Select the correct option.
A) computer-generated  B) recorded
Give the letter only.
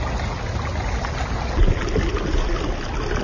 B